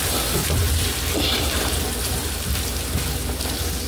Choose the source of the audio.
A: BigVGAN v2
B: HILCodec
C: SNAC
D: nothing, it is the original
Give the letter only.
A